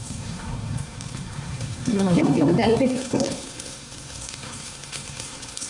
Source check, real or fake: fake